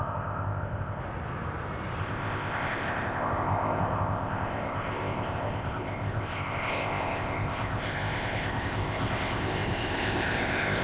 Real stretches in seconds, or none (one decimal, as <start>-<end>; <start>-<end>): 1.0-2.0